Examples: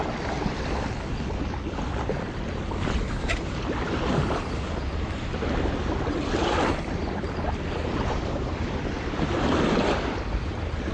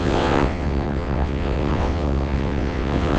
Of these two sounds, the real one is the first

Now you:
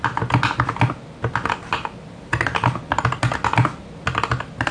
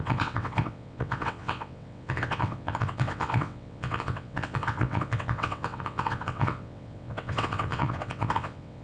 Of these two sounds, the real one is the first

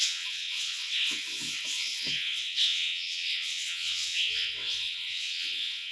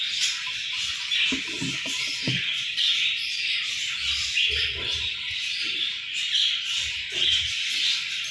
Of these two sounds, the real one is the second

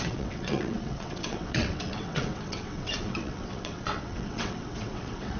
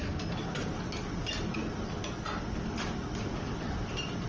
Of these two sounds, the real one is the second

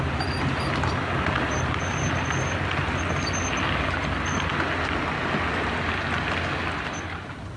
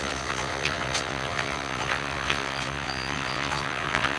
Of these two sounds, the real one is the first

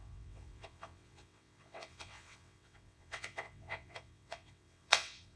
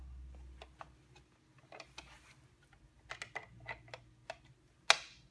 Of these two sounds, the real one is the second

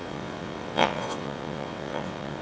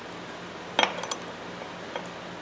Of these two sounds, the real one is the second